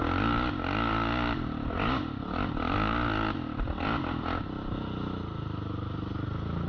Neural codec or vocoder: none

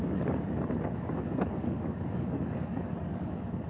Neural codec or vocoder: codec, DAC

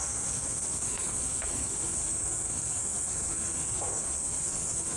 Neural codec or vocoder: codec, SNAC